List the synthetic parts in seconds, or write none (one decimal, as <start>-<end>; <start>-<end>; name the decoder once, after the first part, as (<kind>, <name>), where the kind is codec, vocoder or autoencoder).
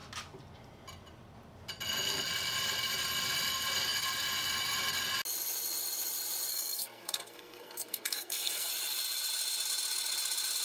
6.5-8.7 (codec, SNAC)